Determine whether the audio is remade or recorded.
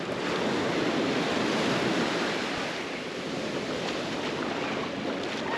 recorded